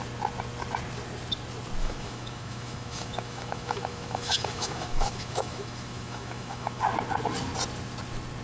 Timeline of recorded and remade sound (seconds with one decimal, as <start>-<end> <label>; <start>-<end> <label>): 0.0-1.8 recorded; 1.8-6.8 remade; 6.8-8.4 recorded